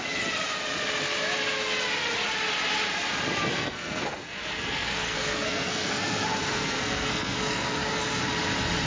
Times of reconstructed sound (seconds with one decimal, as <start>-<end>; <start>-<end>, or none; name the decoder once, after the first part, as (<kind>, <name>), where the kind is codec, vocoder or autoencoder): 3.5-8.2 (codec, SNAC)